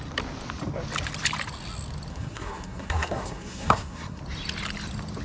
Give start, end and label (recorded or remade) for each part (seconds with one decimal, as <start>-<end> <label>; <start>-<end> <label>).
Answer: 0.0-2.1 recorded; 2.1-4.2 remade; 4.2-5.2 recorded